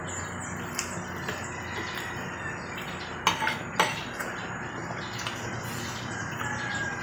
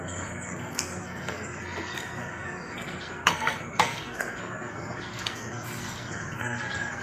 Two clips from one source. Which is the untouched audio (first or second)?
first